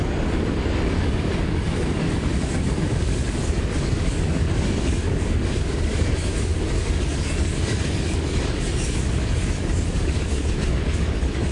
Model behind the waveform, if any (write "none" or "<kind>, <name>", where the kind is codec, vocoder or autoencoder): codec, DAC